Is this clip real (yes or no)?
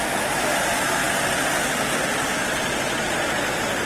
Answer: yes